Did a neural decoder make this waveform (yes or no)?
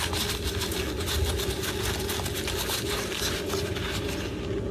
no